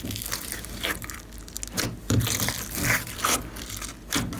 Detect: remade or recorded recorded